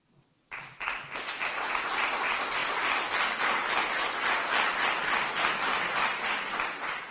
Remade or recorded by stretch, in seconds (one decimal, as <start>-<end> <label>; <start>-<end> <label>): 0.0-7.1 recorded